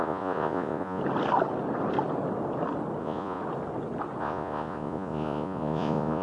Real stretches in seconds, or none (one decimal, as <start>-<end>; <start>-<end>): 1.0-3.0; 3.4-4.2